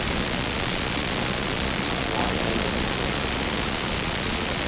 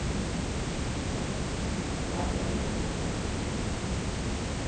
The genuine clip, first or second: second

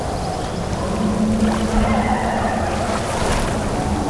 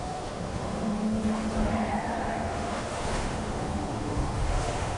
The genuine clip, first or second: first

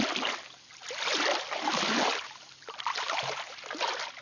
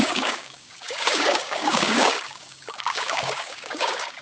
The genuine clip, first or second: first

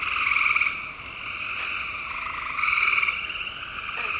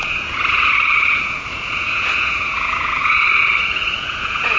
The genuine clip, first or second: first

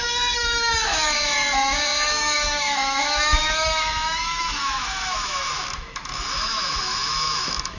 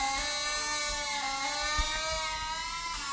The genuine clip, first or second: second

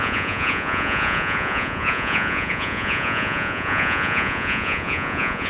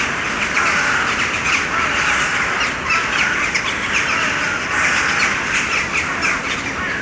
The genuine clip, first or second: second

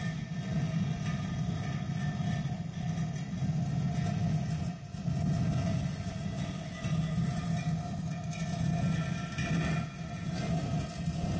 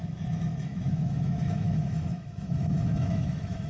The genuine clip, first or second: first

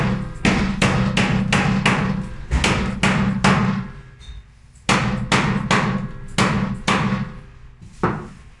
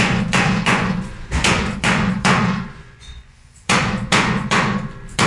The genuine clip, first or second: first